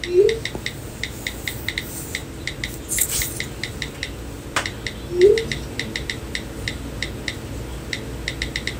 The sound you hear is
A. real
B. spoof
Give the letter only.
A